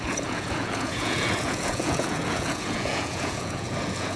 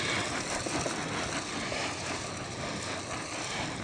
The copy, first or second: first